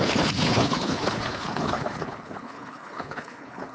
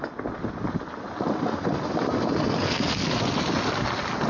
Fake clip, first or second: first